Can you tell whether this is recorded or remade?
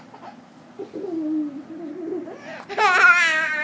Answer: recorded